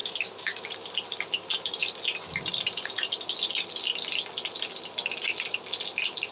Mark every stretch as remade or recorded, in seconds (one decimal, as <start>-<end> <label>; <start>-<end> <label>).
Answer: 0.0-0.7 remade; 0.7-6.3 recorded

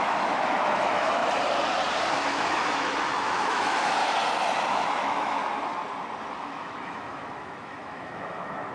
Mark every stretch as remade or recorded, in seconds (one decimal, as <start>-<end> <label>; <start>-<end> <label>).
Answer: 0.0-1.2 remade; 1.2-2.1 recorded; 2.1-4.0 remade; 4.0-4.7 recorded; 4.7-5.4 remade; 5.4-6.3 recorded; 6.3-8.7 remade

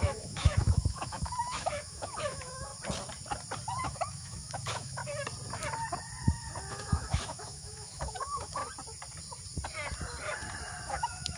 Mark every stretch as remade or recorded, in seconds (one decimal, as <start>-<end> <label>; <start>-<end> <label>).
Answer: 0.0-2.7 remade; 2.7-3.8 recorded; 3.8-5.0 remade; 5.0-6.7 recorded; 6.7-8.6 remade; 8.6-10.9 recorded; 10.9-11.4 remade